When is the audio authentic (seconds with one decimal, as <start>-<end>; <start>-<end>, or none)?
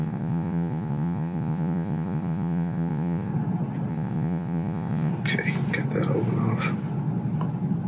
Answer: 3.3-3.9; 5.1-7.9